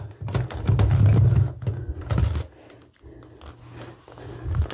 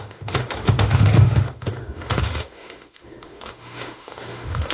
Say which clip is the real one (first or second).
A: first